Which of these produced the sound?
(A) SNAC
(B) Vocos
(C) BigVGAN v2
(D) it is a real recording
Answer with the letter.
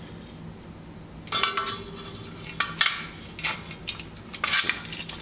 D